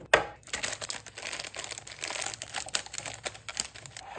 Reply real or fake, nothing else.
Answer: real